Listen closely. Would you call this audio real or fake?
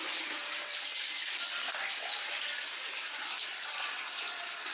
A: fake